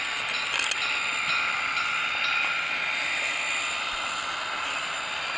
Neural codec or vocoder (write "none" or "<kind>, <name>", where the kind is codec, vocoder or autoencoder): none